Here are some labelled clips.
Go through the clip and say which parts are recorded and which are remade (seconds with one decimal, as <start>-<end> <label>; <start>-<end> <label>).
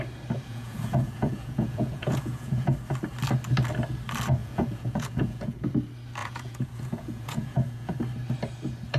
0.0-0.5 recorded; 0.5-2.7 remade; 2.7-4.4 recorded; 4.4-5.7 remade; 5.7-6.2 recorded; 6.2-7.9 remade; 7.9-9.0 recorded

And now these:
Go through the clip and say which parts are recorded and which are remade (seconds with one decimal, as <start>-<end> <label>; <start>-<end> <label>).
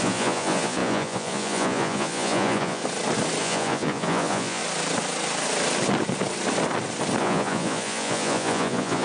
0.0-2.8 remade; 2.8-3.4 recorded; 3.4-4.6 remade; 4.6-7.2 recorded; 7.2-9.0 remade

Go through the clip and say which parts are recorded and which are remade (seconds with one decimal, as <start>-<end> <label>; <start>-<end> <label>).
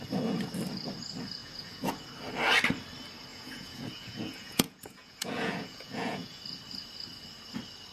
0.0-1.4 recorded; 1.4-2.0 remade; 2.0-3.3 recorded; 3.3-6.4 remade; 6.4-7.9 recorded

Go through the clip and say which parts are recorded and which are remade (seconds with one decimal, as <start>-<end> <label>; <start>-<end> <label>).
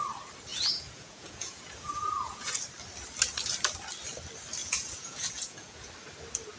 0.0-0.5 recorded; 0.5-2.5 remade; 2.5-4.6 recorded; 4.6-5.9 remade; 5.9-6.6 recorded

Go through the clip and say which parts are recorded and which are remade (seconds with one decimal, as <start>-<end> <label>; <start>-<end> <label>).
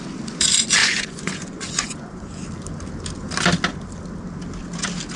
0.0-0.8 recorded; 0.8-2.4 remade; 2.4-5.2 recorded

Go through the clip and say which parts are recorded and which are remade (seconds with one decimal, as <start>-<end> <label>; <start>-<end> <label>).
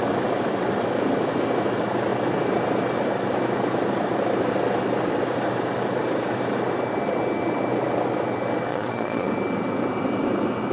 0.0-8.7 recorded; 8.7-9.3 remade; 9.3-10.7 recorded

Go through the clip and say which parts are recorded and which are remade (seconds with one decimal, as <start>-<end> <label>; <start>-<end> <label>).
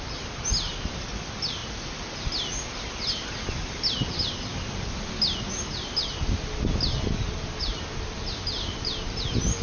0.0-9.6 recorded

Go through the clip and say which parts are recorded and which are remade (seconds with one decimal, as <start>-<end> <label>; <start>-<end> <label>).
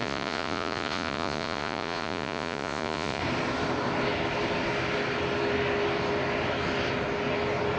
0.0-3.2 remade; 3.2-7.8 recorded